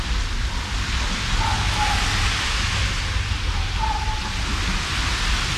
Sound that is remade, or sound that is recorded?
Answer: recorded